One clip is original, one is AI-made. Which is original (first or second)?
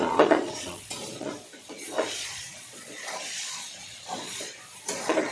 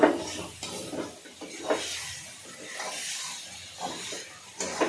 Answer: second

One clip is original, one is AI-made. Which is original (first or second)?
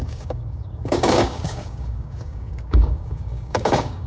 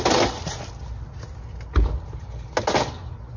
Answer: second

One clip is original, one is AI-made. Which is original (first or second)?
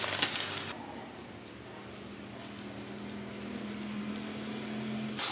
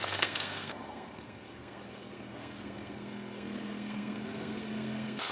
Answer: first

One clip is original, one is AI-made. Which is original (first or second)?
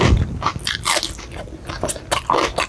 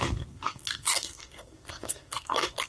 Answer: first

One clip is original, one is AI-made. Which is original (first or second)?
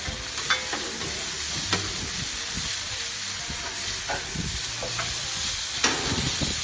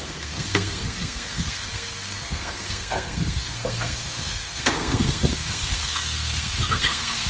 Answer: first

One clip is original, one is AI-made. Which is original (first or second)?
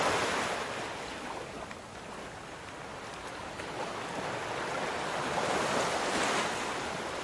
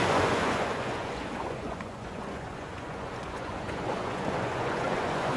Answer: first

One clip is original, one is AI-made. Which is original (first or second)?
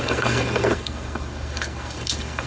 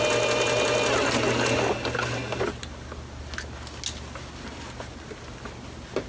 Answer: second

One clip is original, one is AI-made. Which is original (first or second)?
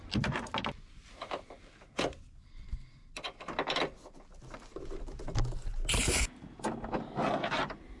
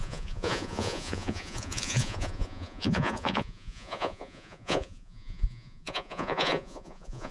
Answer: first